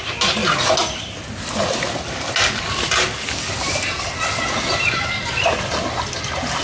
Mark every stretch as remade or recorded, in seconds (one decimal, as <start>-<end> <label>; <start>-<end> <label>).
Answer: 0.0-6.6 recorded

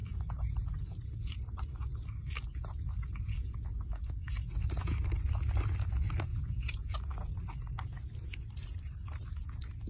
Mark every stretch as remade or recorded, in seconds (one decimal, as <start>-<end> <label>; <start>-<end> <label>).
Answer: 0.0-6.3 recorded; 6.3-7.0 remade; 7.0-9.9 recorded

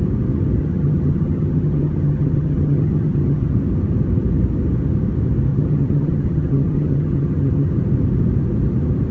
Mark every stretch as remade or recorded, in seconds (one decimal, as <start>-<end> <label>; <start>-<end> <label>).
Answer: 0.0-0.6 recorded; 0.6-3.5 remade; 3.5-5.5 recorded; 5.5-7.7 remade; 7.7-9.1 recorded